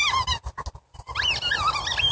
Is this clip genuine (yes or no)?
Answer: yes